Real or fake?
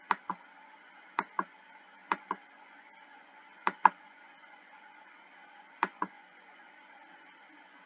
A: fake